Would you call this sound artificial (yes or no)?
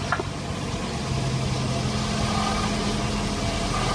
no